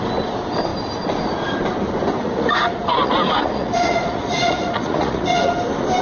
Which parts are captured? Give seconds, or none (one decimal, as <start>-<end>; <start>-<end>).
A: 0.0-2.2; 5.5-6.0